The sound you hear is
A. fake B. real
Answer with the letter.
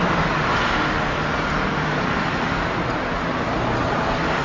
B